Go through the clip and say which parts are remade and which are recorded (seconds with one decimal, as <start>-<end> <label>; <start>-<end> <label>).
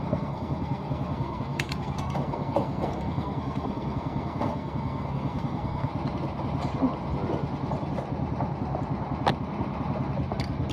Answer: 0.0-5.9 remade; 5.9-10.7 recorded